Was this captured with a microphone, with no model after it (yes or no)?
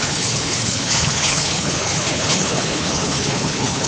no